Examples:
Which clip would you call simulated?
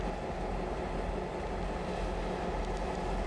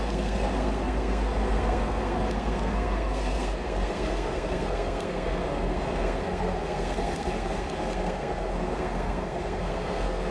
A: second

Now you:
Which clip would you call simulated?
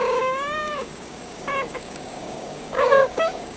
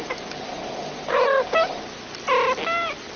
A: first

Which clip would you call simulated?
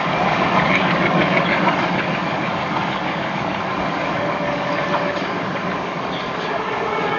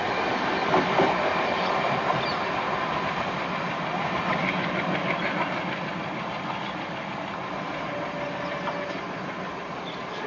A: first